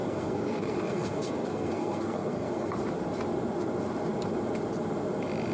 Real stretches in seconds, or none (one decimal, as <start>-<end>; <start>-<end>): 2.7-5.5